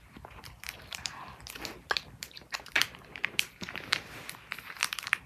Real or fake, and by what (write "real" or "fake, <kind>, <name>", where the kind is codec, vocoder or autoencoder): fake, vocoder, BigVGAN v2